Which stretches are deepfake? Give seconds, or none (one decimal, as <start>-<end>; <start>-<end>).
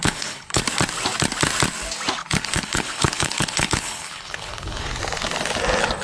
0.0-0.6; 2.2-5.0